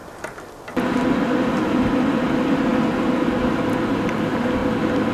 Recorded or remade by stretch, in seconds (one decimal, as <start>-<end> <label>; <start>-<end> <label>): 0.0-5.1 recorded